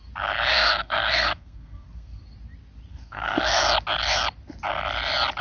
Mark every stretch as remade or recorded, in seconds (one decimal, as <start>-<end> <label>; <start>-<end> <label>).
0.0-0.5 recorded; 0.5-2.2 remade; 2.2-2.9 recorded; 2.9-3.6 remade; 3.6-5.4 recorded